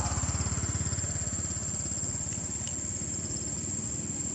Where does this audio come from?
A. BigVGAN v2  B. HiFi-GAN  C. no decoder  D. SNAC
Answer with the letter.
C